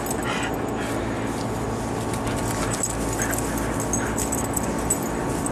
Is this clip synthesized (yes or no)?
no